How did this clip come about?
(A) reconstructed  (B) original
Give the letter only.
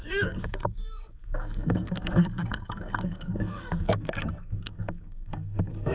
A